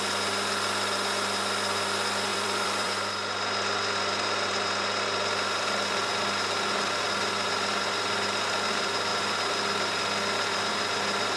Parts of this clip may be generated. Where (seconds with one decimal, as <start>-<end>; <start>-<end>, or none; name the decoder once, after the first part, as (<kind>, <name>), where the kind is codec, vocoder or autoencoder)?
2.3-3.1 (vocoder, BigVGAN v2)